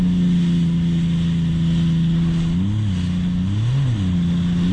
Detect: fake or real real